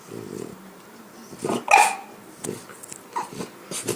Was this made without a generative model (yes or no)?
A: yes